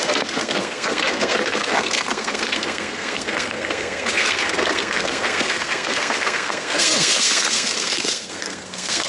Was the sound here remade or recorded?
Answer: remade